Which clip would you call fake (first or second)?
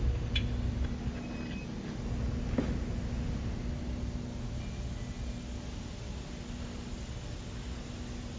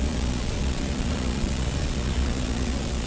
second